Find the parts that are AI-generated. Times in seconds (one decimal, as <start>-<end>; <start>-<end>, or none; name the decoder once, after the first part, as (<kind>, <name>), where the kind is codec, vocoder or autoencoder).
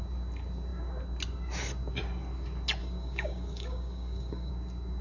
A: 2.8-4.5 (codec, DAC)